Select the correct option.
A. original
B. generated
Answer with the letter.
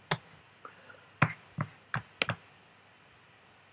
A